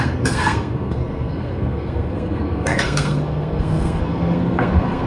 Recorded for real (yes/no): no